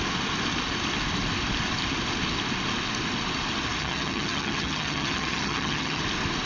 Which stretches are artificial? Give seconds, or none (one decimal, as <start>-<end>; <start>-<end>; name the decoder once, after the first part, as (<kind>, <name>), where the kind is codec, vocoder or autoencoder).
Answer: 3.8-6.0 (vocoder, HiFi-GAN)